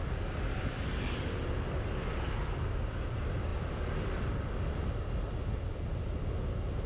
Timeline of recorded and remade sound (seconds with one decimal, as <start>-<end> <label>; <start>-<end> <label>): 0.0-6.9 recorded